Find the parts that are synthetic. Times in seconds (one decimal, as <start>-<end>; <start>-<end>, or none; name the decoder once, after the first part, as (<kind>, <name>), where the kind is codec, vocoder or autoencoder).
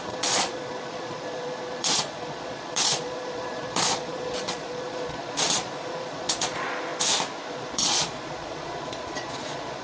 0.0-6.9 (vocoder, Vocos); 7.5-9.8